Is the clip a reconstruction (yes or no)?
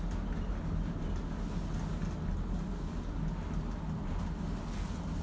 no